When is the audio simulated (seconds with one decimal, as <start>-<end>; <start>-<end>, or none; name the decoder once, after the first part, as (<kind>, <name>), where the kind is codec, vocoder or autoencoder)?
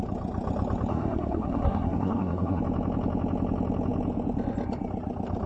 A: 0.9-2.6 (codec, SNAC)